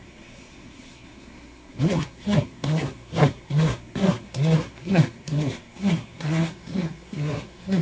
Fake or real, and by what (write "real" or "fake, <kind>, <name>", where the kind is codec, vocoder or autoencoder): fake, codec, SNAC